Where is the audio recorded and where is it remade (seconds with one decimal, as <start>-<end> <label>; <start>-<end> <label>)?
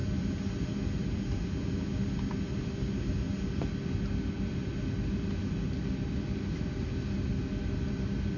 0.0-8.4 recorded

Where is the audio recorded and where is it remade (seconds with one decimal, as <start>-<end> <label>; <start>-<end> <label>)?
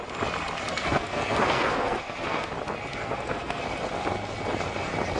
0.0-0.7 recorded; 0.7-2.5 remade; 2.5-3.0 recorded; 3.0-3.6 remade; 3.6-5.2 recorded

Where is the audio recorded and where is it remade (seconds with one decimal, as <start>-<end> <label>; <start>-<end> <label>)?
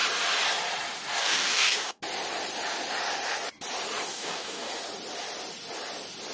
0.0-1.2 recorded; 1.2-2.0 remade; 2.0-4.1 recorded; 4.1-4.7 remade; 4.7-6.3 recorded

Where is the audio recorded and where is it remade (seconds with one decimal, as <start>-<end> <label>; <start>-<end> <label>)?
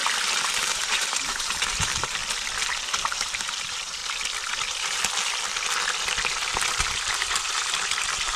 0.0-0.5 recorded; 0.5-2.2 remade; 2.2-3.0 recorded; 3.0-4.0 remade; 4.0-6.8 recorded; 6.8-8.4 remade